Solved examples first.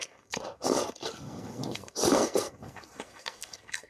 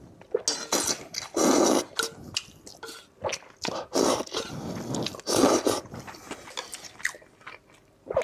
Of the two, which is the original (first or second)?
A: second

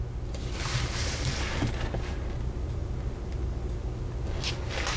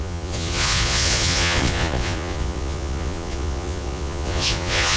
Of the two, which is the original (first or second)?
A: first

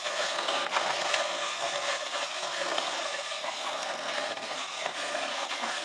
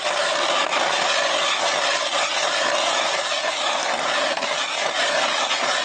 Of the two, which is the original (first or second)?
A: second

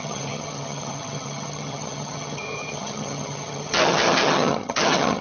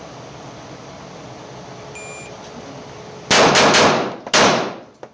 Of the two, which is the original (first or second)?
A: second